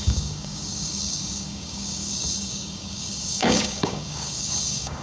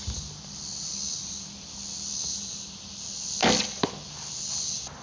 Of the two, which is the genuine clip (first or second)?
second